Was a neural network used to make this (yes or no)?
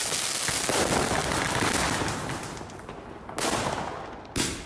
no